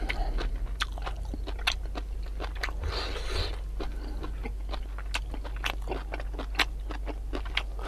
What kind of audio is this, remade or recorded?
recorded